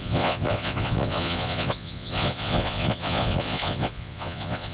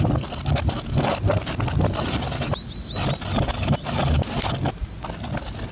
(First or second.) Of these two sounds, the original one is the second